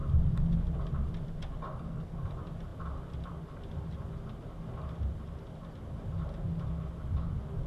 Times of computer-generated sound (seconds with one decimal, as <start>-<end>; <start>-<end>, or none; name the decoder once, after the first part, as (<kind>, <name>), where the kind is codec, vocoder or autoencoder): 1.7-2.3 (codec, SNAC)